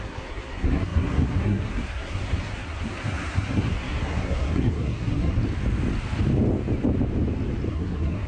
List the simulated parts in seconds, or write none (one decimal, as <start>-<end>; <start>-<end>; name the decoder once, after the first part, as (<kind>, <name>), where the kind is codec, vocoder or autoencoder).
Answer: 0.0-5.4 (codec, SNAC); 7.7-8.3